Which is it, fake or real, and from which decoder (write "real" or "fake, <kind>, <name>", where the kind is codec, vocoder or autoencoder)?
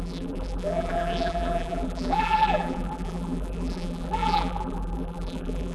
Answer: fake, vocoder, BigVGAN v2